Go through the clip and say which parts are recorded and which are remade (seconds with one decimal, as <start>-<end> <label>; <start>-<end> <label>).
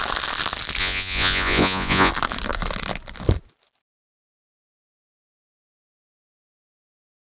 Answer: 0.0-0.8 recorded; 0.8-2.1 remade; 2.1-7.4 recorded